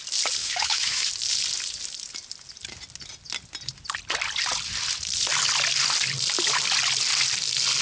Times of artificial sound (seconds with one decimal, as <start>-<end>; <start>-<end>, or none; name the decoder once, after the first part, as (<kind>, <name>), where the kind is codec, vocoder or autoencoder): 0.4-1.1 (autoencoder, DAC-VAE)